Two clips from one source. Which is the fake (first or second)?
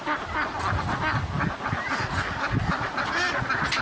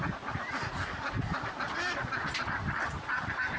second